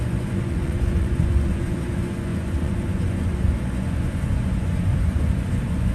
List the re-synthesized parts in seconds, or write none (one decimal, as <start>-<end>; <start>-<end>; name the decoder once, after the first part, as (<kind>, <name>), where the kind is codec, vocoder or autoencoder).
0.0-5.9 (vocoder, Vocos)